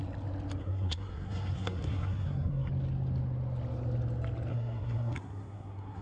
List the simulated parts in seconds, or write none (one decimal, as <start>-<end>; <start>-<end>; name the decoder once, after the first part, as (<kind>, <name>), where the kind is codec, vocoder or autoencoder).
0.6-2.7 (codec, SNAC); 4.5-6.0